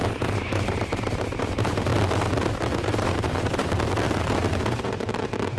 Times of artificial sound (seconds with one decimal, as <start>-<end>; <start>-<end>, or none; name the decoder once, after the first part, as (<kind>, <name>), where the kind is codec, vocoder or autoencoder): 0.0-1.9 (vocoder, BigVGAN v2); 2.8-3.6; 4.2-5.6